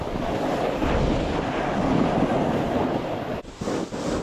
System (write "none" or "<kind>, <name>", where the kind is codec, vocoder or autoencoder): none